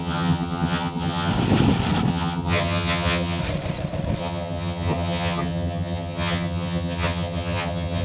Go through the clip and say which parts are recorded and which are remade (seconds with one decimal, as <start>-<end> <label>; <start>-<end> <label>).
0.0-1.3 remade; 1.3-2.1 recorded; 2.1-3.4 remade; 3.4-4.2 recorded; 4.2-8.0 remade